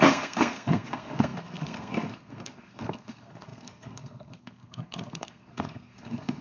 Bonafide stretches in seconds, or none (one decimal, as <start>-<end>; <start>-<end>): none